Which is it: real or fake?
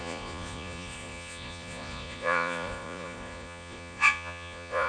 fake